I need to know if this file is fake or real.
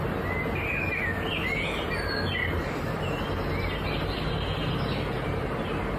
real